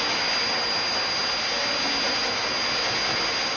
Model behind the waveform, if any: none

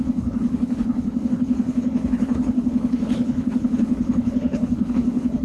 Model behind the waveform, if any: codec, HILCodec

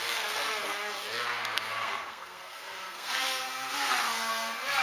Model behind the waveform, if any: codec, SNAC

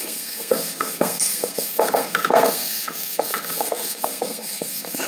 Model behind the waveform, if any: codec, SNAC